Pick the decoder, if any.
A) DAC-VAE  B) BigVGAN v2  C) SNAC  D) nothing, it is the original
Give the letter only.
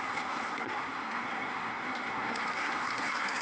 C